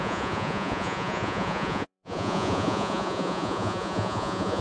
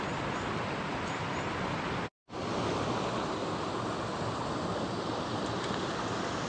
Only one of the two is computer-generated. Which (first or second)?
first